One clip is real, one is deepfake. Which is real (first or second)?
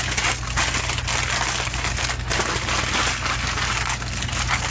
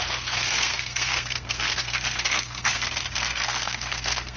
first